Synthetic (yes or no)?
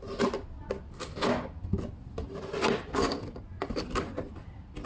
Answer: no